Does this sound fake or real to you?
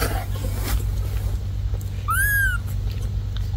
real